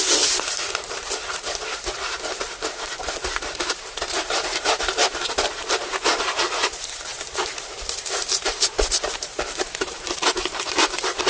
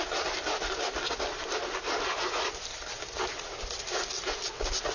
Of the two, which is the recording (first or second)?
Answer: second